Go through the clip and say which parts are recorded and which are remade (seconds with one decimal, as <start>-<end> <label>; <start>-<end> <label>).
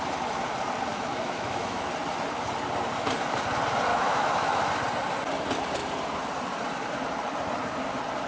0.0-0.9 recorded; 0.9-1.9 remade; 1.9-3.9 recorded; 3.9-4.7 remade; 4.7-8.3 recorded